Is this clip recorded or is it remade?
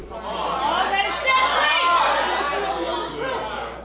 recorded